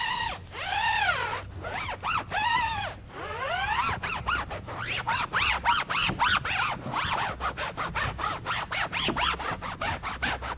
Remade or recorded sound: recorded